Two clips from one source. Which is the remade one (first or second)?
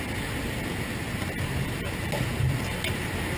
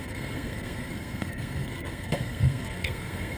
second